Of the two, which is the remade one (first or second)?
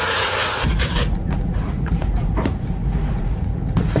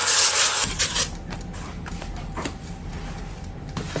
first